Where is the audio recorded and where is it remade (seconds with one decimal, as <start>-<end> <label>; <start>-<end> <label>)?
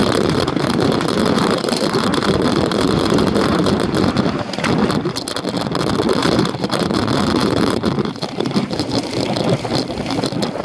0.0-4.4 remade; 4.4-6.2 recorded; 6.2-7.0 remade; 7.0-7.4 recorded; 7.4-8.9 remade; 8.9-10.6 recorded